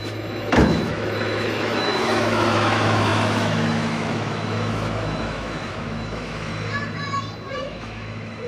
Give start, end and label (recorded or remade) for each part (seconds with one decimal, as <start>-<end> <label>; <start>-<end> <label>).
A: 0.0-6.5 remade; 6.5-7.6 recorded; 7.6-8.5 remade